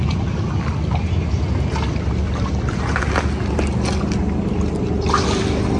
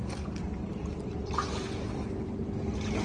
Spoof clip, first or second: second